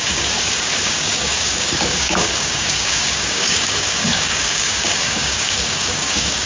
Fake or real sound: fake